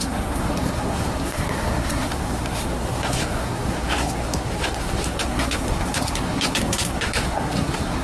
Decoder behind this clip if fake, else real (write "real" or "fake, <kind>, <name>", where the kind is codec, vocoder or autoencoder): fake, codec, SNAC